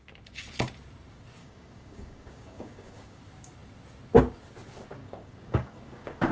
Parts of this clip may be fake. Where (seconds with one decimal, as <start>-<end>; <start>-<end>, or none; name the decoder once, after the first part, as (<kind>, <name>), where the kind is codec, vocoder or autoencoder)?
1.4-3.2 (codec, DAC); 5.0-6.3